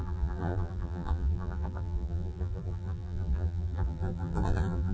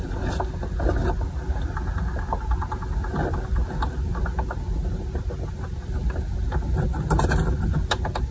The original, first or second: second